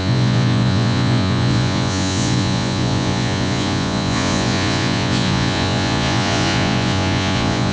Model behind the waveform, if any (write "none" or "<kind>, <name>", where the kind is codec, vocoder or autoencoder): vocoder, Vocos